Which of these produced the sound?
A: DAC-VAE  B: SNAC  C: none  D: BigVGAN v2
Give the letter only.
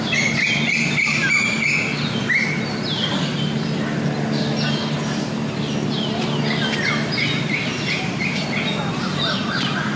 C